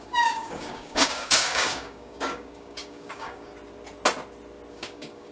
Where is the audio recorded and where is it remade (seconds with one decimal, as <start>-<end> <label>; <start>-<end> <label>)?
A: 0.0-3.5 remade; 3.5-4.7 recorded; 4.7-5.3 remade